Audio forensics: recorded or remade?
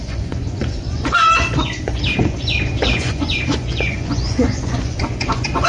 remade